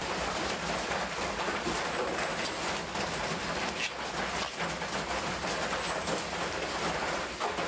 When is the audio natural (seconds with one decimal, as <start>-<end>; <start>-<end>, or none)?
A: 0.0-7.7